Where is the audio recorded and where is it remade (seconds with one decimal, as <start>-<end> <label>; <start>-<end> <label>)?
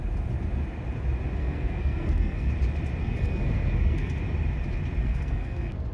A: 0.0-1.4 recorded; 1.4-2.5 remade; 2.5-3.0 recorded; 3.0-4.1 remade; 4.1-5.0 recorded; 5.0-5.9 remade